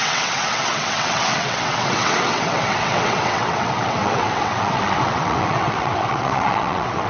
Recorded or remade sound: remade